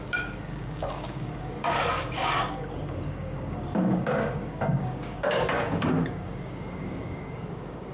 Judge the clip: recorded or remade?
remade